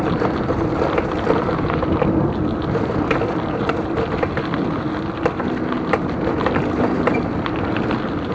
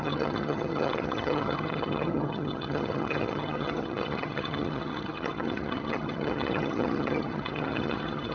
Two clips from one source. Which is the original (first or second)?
first